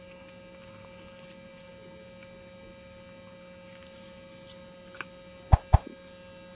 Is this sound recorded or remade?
recorded